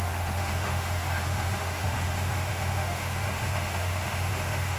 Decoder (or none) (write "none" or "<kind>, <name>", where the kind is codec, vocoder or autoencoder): autoencoder, DAC-VAE